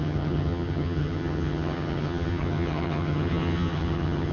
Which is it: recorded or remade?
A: remade